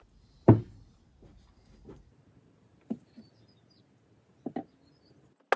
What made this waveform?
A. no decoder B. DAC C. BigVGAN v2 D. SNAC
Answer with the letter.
A